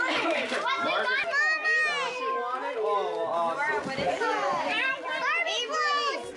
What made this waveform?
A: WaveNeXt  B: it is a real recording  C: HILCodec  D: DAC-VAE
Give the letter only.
B